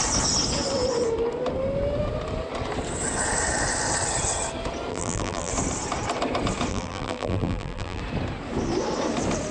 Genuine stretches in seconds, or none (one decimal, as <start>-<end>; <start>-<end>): 0.0-4.9; 5.5-6.7; 8.0-9.5